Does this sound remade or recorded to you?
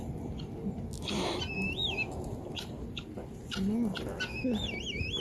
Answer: recorded